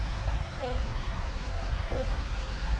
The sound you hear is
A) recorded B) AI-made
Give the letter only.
B